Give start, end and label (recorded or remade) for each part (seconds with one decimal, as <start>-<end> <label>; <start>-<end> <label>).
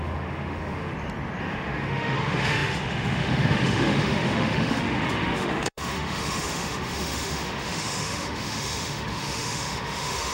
0.0-0.9 remade; 0.9-1.4 recorded; 1.4-10.3 remade